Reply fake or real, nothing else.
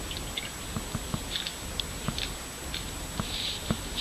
real